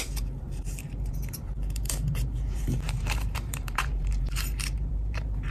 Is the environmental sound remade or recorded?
remade